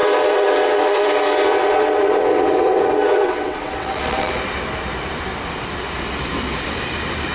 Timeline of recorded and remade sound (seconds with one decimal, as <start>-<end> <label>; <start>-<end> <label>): 0.0-4.4 remade; 4.4-7.3 recorded